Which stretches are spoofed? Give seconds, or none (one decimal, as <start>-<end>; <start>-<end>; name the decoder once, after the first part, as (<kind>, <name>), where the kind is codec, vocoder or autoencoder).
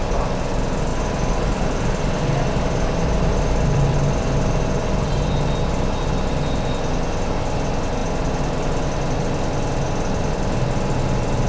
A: 0.9-6.1 (vocoder, BigVGAN v2)